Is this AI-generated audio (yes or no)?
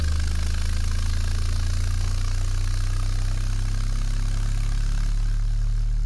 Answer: no